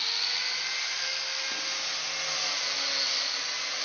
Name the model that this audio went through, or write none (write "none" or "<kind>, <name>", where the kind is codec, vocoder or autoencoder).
none